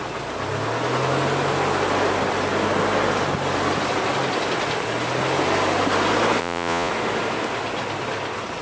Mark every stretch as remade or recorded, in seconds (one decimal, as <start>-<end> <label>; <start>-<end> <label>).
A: 0.0-6.4 recorded; 6.4-6.9 remade; 6.9-8.6 recorded